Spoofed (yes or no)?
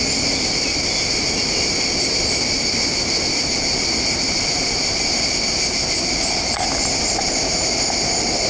no